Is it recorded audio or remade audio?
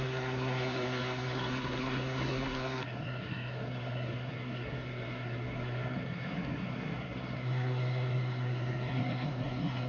remade